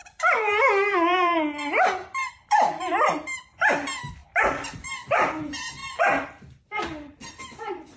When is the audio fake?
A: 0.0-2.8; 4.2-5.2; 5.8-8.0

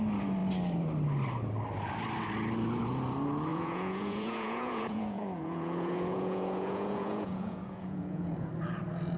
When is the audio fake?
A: 3.5-8.5

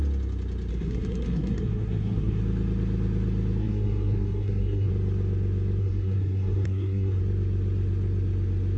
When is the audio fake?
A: 0.7-2.4; 3.6-4.9; 5.8-7.2